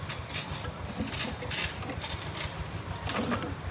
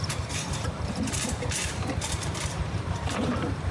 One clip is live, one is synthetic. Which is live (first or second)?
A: first